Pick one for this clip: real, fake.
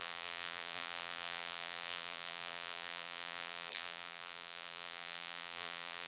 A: fake